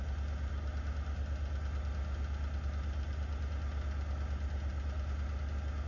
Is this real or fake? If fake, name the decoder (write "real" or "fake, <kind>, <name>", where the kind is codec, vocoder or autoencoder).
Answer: real